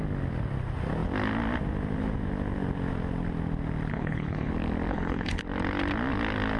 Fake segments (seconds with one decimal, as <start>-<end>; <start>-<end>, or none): 3.9-4.5; 4.9-5.4